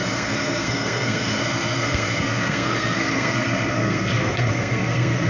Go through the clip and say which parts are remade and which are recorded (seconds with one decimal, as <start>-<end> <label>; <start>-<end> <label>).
0.0-5.3 remade